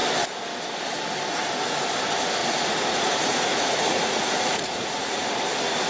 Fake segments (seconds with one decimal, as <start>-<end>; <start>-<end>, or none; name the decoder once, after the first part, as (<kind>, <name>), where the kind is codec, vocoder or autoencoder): 2.4-5.2 (vocoder, Vocos)